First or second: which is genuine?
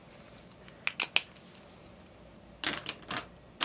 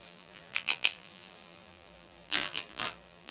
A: first